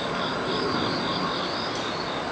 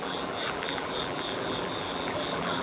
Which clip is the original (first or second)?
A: first